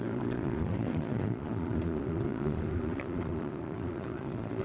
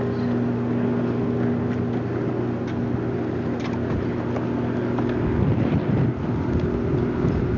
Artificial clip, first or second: first